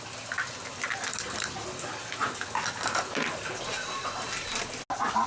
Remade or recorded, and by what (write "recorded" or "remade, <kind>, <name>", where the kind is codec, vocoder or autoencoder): recorded